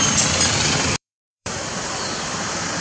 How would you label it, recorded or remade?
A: remade